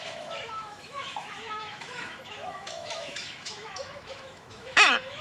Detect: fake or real fake